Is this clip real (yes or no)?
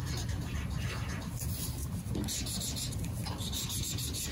yes